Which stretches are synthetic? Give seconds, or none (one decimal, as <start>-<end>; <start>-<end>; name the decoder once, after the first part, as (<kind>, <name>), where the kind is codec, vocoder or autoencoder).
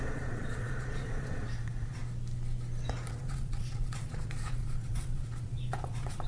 0.0-2.0 (vocoder, Vocos); 3.1-6.3